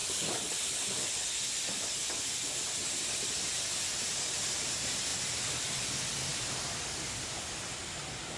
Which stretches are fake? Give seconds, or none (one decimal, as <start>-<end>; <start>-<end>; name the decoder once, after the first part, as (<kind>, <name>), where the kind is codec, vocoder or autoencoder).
0.0-0.5 (codec, DAC)